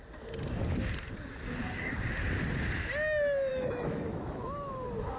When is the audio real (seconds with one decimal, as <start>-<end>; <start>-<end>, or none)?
0.0-3.5; 4.7-5.2